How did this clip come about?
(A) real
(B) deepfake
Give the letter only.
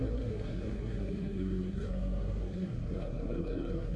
B